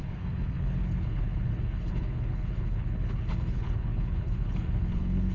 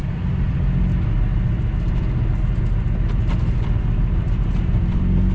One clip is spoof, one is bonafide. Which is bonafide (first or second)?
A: second